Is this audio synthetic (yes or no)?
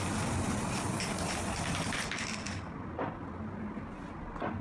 no